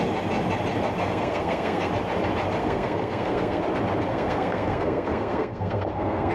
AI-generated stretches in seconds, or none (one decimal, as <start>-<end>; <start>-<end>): 1.0-1.9; 2.6-3.6; 4.1-6.3